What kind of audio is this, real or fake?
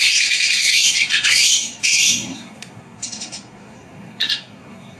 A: fake